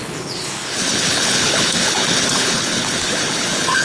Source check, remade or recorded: remade